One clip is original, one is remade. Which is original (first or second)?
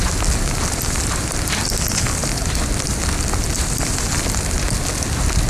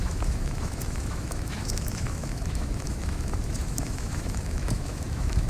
first